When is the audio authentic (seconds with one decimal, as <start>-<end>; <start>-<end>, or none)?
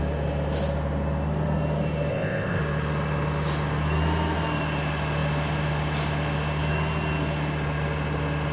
0.0-2.1; 2.6-8.5